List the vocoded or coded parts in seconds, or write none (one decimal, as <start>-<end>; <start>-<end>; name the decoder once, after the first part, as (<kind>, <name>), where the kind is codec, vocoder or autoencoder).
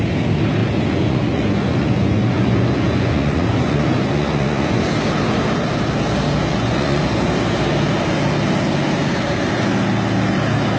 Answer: 0.6-4.8 (vocoder, Vocos); 6.5-7.0